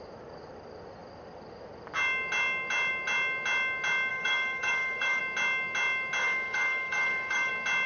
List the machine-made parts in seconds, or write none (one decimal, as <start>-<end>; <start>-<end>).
4.1-5.2; 6.2-7.5